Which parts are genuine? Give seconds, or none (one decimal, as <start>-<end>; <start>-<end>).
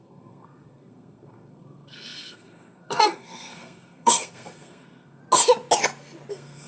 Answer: 5.2-6.3